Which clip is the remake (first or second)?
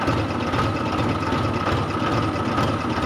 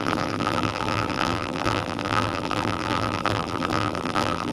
second